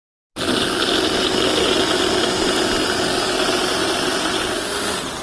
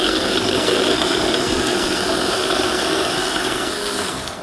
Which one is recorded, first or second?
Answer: first